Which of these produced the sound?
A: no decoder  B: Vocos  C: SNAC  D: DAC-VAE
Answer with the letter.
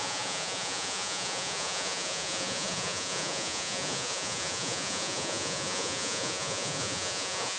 B